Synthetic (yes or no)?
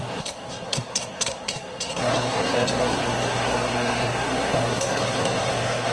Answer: yes